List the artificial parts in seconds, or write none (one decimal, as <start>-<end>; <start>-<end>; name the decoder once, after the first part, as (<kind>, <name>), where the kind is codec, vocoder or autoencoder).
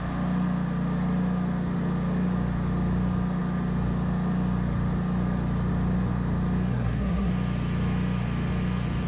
6.7-7.3 (codec, SNAC)